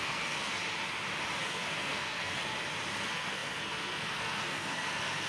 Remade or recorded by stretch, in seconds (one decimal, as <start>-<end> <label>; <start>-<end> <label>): 0.0-0.6 remade; 0.6-1.4 recorded; 1.4-2.4 remade; 2.4-3.0 recorded; 3.0-5.3 remade